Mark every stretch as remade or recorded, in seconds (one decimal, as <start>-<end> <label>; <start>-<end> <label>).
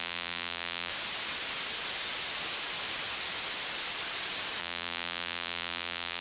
0.0-0.9 remade; 0.9-4.6 recorded; 4.6-6.2 remade